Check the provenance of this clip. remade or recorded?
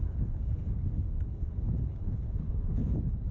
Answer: remade